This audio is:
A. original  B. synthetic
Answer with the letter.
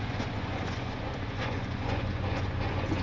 B